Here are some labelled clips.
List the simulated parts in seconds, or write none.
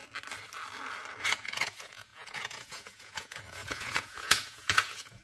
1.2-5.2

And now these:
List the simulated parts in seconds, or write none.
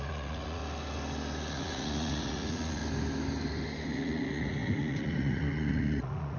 0.0-0.6; 1.5-2.8; 3.9-6.4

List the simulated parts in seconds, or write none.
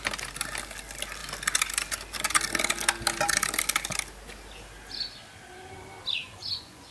6.2-6.9